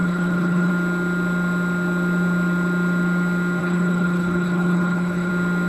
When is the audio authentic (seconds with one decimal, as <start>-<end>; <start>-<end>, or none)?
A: 0.7-3.6; 5.3-5.7